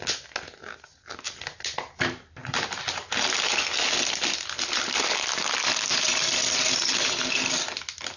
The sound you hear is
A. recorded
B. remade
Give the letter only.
A